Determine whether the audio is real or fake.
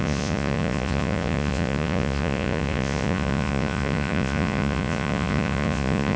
fake